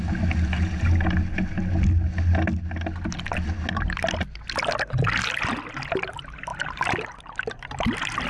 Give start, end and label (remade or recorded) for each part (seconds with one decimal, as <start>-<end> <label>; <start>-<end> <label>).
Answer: 0.0-8.3 recorded

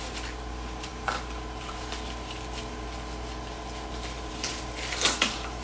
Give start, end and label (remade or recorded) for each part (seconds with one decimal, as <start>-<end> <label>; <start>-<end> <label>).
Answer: 0.0-5.6 recorded